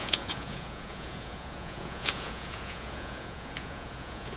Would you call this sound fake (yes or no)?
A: yes